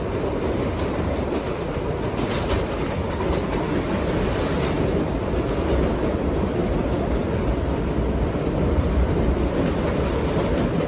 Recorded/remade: remade